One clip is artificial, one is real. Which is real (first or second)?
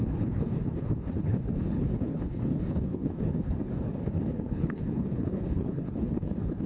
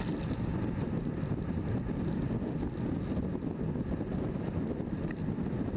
second